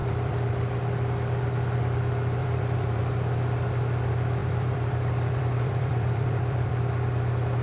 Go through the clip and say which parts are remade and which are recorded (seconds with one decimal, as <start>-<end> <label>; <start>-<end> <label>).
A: 0.0-0.5 remade; 0.5-2.4 recorded; 2.4-3.0 remade; 3.0-4.4 recorded; 4.4-6.7 remade; 6.7-7.6 recorded